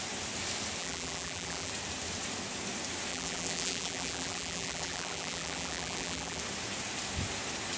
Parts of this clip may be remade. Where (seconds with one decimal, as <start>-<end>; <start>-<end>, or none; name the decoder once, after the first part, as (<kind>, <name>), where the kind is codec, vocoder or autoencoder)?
0.8-1.7 (vocoder, BigVGAN v2); 3.1-6.4